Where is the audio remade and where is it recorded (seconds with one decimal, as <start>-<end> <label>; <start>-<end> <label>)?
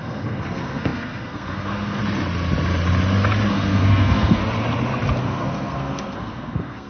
0.0-2.0 remade; 2.0-3.5 recorded; 3.5-4.4 remade; 4.4-5.2 recorded; 5.2-6.9 remade